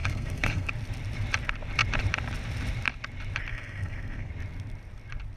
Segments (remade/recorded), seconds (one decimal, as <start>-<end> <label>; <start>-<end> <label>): 0.0-0.7 remade; 0.7-3.5 recorded; 3.5-4.3 remade; 4.3-5.4 recorded